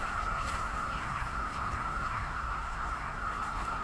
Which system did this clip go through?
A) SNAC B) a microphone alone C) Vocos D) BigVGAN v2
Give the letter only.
A